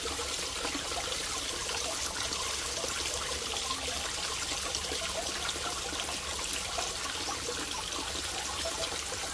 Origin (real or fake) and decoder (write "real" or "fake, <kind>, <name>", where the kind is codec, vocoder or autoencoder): real